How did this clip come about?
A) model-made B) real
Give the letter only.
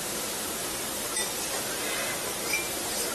A